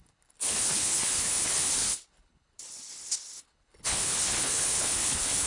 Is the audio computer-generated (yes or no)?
yes